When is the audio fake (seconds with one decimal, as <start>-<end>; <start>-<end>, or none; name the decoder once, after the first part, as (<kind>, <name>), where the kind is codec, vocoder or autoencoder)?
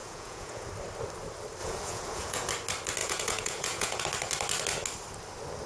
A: 0.0-0.7 (vocoder, Vocos); 1.6-2.5; 3.0-4.0